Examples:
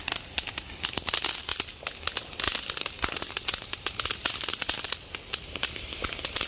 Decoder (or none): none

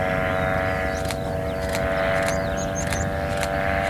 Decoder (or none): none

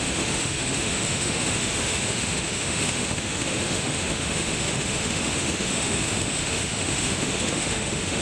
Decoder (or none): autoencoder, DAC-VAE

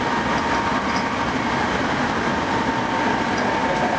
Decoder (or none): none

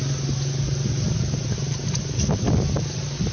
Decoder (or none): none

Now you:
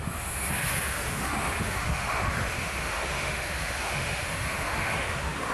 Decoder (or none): autoencoder, DAC-VAE